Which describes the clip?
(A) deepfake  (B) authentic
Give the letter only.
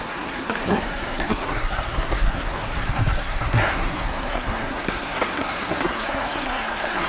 A